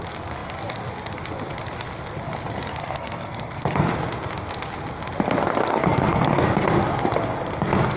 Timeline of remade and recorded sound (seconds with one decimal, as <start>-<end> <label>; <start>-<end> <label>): 0.0-2.7 recorded; 2.7-3.9 remade; 3.9-5.7 recorded; 5.7-6.4 remade; 6.4-8.0 recorded